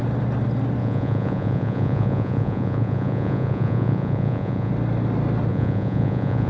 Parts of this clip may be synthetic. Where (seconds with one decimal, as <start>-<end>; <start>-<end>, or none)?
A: 0.8-4.7; 5.5-6.5